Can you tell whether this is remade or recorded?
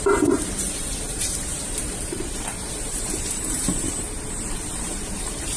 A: remade